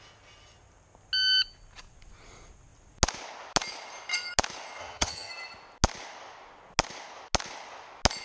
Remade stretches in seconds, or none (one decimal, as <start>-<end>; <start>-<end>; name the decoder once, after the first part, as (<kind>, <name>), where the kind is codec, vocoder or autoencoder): 4.8-5.3 (vocoder, HiFi-GAN)